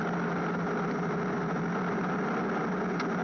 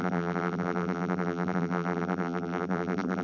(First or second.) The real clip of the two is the first